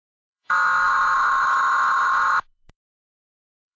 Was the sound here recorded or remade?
remade